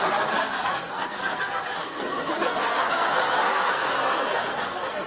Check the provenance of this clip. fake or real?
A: fake